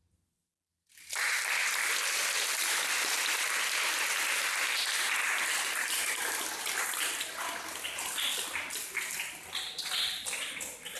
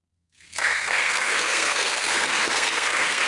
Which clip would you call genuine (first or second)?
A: first